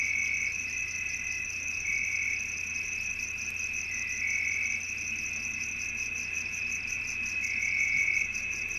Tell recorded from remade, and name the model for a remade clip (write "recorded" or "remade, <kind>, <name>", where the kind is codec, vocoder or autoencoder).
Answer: recorded